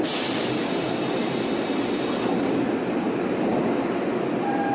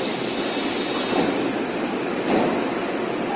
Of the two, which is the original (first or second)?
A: first